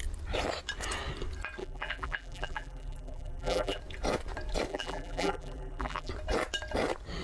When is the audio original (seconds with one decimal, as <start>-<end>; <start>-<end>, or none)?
0.0-1.6; 3.8-4.7; 6.1-7.2